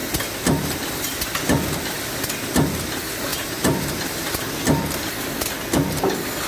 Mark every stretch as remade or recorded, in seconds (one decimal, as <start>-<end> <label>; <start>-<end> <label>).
0.0-3.3 recorded; 3.3-4.2 remade; 4.2-6.5 recorded